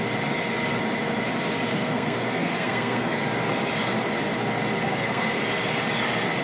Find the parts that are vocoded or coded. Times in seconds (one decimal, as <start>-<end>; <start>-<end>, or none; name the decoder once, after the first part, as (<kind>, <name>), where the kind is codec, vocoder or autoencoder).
1.7-3.2 (codec, SNAC); 4.8-5.4